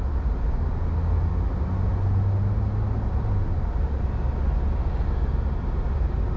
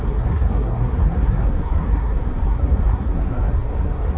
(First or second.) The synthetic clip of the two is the second